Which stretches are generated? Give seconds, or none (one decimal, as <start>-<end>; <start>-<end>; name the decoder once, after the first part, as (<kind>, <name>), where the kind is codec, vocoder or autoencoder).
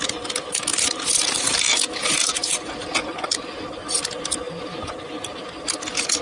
none